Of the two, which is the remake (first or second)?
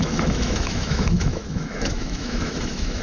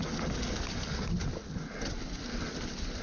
first